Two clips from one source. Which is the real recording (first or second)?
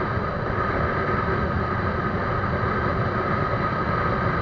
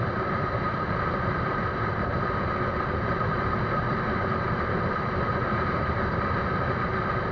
first